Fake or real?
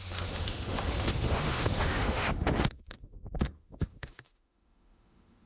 fake